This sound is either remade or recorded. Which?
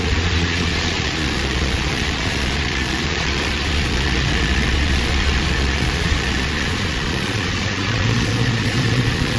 remade